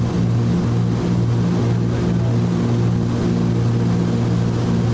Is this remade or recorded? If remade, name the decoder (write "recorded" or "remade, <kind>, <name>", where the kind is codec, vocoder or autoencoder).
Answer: recorded